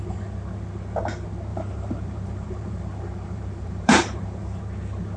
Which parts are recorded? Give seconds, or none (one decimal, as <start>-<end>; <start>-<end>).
0.0-1.5; 4.6-5.2